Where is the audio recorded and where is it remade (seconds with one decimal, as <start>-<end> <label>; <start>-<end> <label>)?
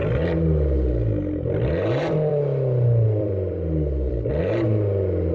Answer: 0.0-2.3 recorded; 2.3-4.3 remade; 4.3-5.3 recorded